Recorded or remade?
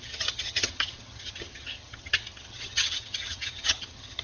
remade